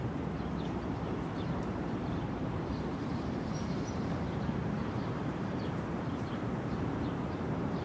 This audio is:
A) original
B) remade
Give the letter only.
B